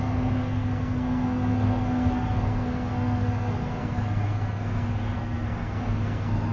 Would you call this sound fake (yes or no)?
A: yes